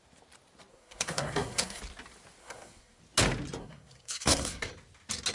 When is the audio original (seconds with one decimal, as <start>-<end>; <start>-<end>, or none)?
0.0-0.7; 1.8-2.4; 3.0-3.6; 4.7-5.3